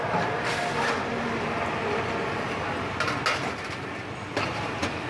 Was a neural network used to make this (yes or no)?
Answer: no